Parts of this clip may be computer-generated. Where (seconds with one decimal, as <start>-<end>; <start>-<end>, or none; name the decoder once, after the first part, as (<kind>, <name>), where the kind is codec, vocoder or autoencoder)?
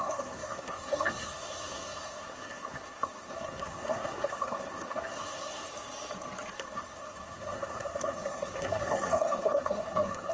0.0-5.7 (codec, SNAC); 6.5-10.3